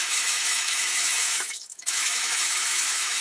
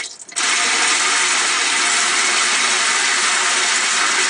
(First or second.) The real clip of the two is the second